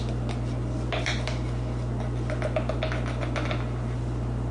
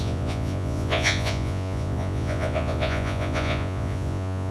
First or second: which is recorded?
first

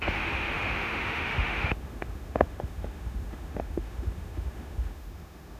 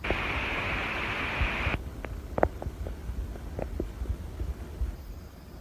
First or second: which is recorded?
second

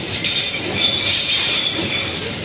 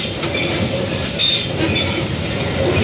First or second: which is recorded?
second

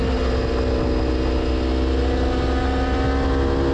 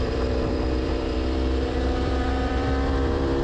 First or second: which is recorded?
first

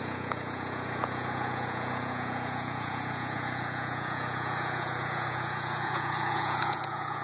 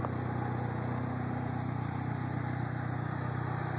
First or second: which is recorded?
second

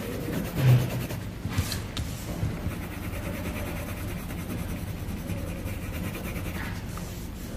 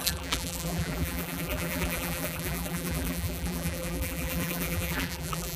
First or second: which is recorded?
first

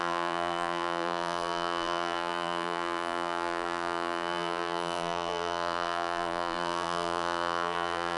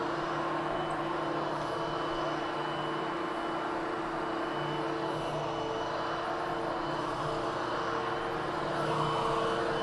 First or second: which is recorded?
second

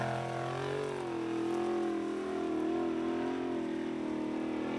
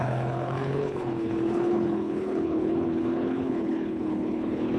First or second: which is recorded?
first